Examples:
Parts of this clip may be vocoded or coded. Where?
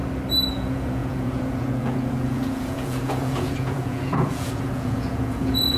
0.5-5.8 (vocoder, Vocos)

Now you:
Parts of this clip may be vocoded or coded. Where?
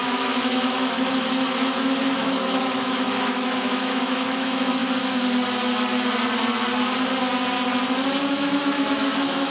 0.0-4.8 (autoencoder, DAC-VAE); 8.3-9.5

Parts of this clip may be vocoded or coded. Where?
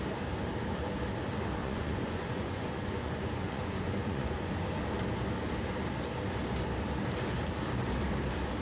1.6-4.5 (vocoder, Vocos)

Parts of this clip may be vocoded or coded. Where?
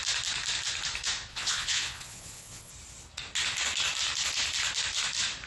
1.3-2.7 (vocoder, Vocos)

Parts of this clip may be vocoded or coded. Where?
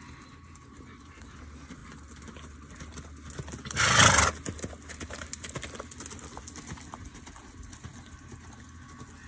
none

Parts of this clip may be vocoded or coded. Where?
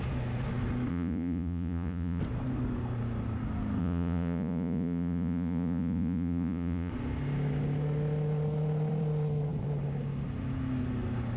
0.9-2.2 (vocoder, Vocos); 3.8-6.9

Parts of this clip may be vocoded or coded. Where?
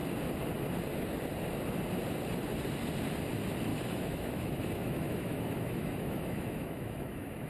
3.7-7.5 (autoencoder, DAC-VAE)